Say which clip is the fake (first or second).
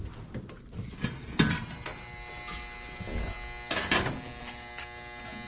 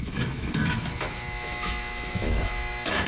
second